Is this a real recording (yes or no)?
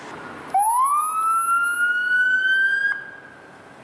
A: yes